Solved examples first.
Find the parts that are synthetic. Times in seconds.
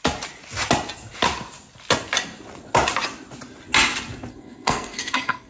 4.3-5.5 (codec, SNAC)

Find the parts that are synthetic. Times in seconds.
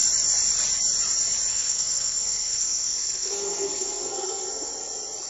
1.5-4.7 (codec, SNAC)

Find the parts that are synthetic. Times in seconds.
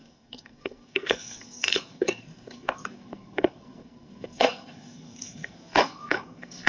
0.0-6.7 (codec, SNAC)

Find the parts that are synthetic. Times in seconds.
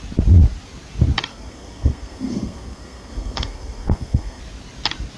1.3-4.4 (codec, SNAC)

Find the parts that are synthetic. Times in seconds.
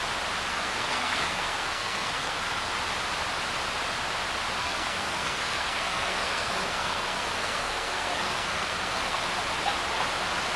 0.5-2.7 (codec, SNAC); 4.6-9.2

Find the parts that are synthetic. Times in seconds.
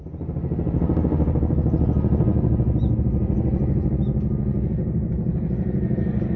none